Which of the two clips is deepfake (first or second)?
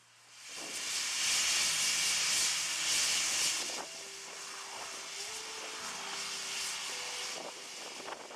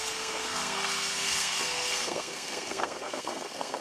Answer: second